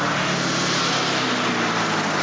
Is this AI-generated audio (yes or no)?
no